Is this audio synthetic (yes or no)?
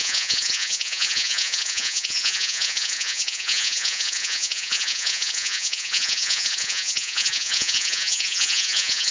yes